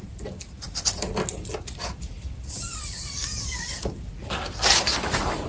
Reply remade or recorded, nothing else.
recorded